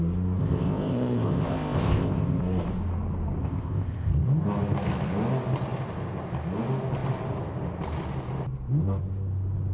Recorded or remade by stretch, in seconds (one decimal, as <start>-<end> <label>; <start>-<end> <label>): 0.0-0.4 recorded; 0.4-2.4 remade; 2.4-3.4 recorded; 3.4-4.1 remade; 4.1-9.7 recorded